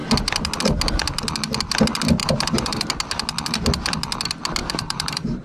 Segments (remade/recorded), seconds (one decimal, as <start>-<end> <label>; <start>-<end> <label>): 0.0-2.2 recorded; 2.2-2.9 remade; 2.9-4.6 recorded; 4.6-5.4 remade